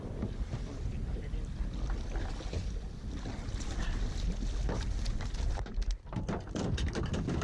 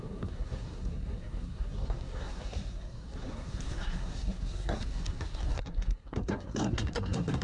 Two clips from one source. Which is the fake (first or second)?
second